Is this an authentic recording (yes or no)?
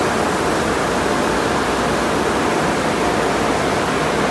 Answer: yes